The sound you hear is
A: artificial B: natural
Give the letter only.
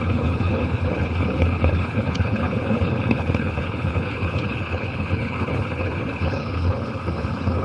A